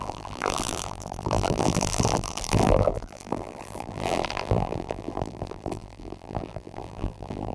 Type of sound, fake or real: fake